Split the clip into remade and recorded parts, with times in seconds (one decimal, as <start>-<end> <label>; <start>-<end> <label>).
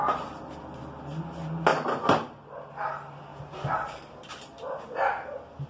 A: 0.0-5.7 recorded